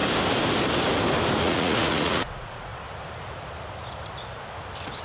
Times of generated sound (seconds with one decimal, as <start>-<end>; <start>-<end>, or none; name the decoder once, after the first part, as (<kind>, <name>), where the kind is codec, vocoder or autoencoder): 1.4-2.7 (vocoder, Vocos)